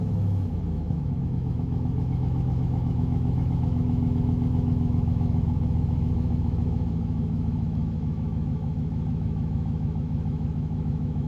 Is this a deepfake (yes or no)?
yes